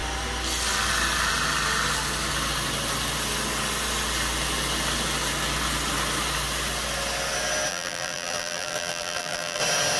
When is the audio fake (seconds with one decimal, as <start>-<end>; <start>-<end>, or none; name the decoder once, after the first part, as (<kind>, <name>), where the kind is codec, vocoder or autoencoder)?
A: 7.7-9.6 (vocoder, BigVGAN v2)